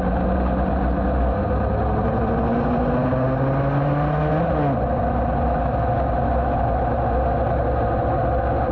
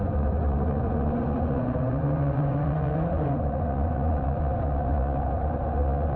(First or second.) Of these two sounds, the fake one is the second